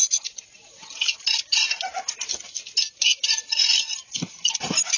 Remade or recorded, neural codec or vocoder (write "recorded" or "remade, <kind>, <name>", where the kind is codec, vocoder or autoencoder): recorded